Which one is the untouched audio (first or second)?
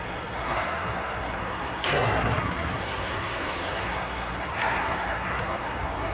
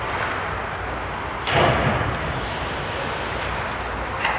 second